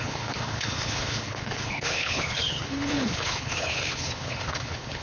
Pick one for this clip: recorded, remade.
remade